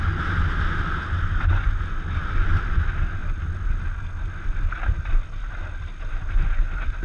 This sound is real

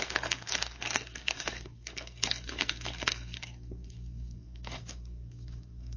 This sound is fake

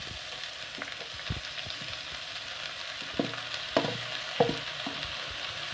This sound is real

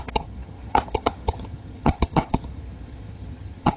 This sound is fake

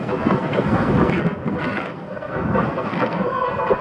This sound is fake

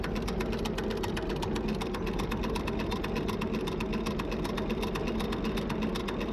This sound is real